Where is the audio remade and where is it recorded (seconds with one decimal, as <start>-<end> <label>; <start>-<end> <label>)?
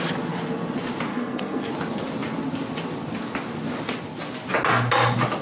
0.0-1.1 recorded; 1.1-1.7 remade; 1.7-5.4 recorded